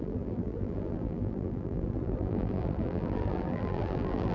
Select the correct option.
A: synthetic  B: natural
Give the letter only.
A